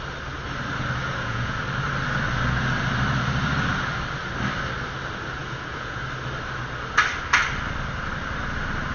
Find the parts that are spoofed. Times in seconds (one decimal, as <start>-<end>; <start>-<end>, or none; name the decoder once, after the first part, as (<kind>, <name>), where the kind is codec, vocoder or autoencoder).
1.0-1.6 (vocoder, Vocos); 5.4-6.0